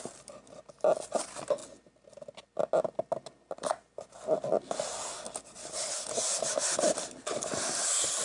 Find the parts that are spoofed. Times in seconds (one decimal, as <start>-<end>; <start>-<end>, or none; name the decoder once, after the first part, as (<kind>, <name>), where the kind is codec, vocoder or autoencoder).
none